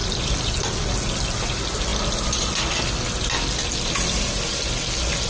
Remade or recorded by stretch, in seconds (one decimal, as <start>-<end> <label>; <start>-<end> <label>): 0.0-1.2 remade; 1.2-5.3 recorded